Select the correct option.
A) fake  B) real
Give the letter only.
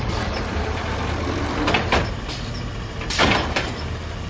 A